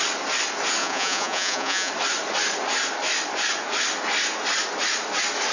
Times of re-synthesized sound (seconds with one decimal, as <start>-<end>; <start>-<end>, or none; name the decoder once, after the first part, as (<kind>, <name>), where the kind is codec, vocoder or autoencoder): 0.8-1.9 (vocoder, Vocos)